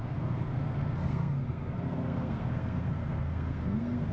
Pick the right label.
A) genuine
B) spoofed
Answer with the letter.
B